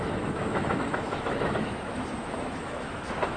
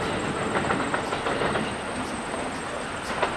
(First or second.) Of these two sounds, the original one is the second